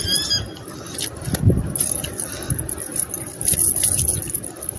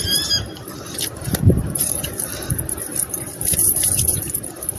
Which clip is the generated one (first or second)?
second